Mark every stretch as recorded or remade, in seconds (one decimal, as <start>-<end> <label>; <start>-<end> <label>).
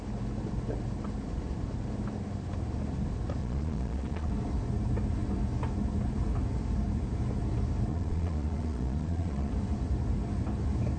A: 0.0-3.4 recorded; 3.4-4.3 remade; 4.3-7.9 recorded; 7.9-9.5 remade; 9.5-11.0 recorded